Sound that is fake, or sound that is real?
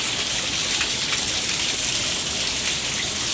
real